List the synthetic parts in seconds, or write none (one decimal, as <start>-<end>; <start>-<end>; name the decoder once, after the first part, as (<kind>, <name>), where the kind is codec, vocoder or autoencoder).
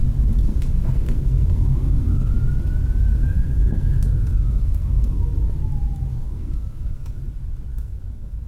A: 0.4-2.3 (codec, SNAC); 3.1-5.2; 6.1-7.2; 7.7-8.5